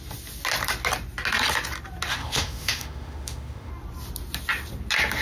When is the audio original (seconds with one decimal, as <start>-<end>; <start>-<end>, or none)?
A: 0.0-2.1; 3.7-5.2